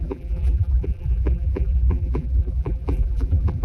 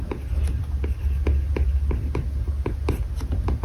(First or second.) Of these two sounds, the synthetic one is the first